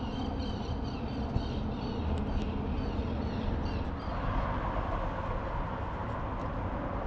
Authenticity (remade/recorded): recorded